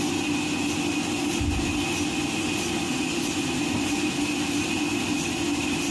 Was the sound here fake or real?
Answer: real